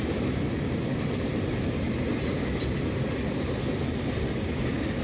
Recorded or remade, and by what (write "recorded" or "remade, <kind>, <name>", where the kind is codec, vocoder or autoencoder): recorded